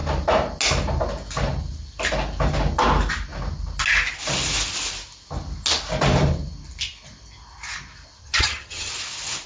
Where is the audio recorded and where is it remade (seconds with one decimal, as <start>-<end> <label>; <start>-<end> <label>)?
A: 0.0-8.2 recorded; 8.2-8.9 remade; 8.9-9.5 recorded